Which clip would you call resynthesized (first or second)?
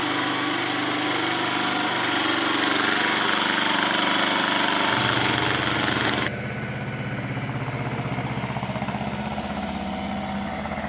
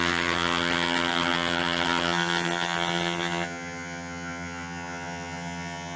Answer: second